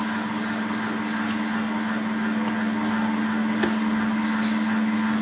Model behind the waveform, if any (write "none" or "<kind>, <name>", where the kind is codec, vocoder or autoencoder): none